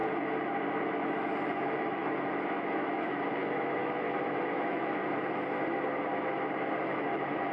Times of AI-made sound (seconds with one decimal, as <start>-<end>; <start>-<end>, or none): 0.8-5.0; 6.7-7.5